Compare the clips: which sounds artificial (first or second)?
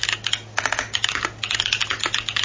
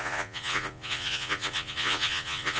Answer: second